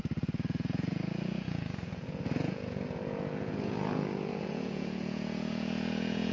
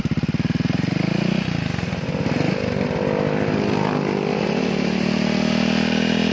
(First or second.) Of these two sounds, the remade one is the first